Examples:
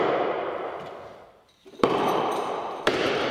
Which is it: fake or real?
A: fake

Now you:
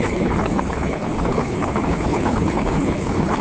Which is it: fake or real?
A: fake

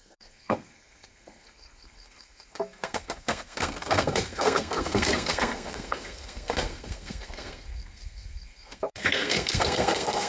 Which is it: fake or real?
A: fake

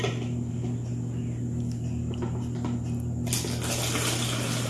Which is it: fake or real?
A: real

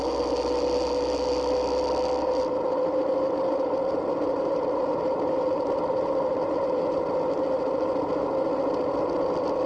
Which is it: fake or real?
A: real